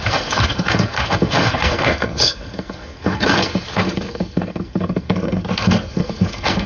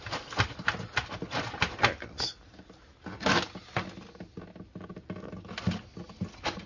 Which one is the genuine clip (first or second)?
second